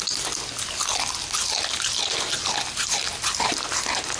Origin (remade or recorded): recorded